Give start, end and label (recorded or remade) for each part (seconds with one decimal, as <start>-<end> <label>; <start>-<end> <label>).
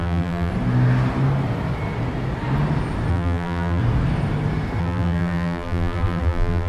0.0-0.5 remade; 0.5-3.1 recorded; 3.1-3.8 remade; 3.8-4.8 recorded; 4.8-6.7 remade